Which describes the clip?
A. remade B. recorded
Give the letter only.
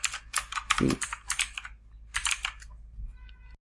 B